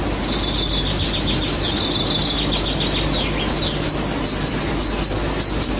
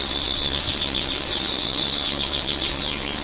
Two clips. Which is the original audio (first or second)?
first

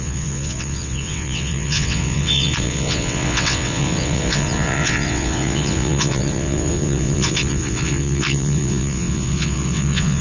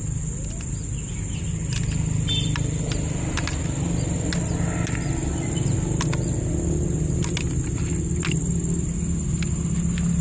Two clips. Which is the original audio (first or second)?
second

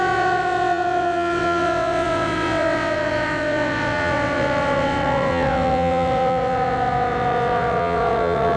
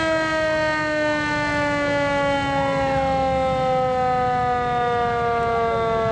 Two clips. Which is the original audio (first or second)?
second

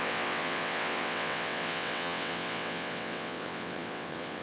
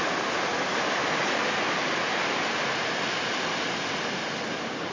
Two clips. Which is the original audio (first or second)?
second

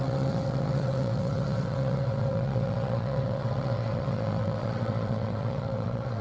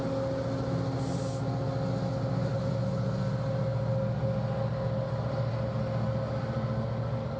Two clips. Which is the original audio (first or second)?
second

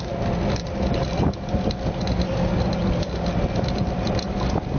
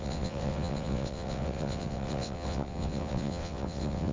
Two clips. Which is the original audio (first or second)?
first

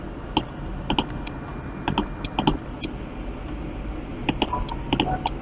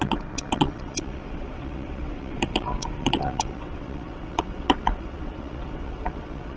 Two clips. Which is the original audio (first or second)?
first